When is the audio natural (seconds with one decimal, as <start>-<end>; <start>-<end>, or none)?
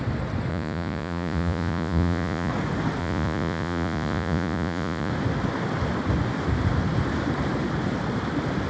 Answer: 0.0-0.5; 2.5-3.0; 5.1-8.7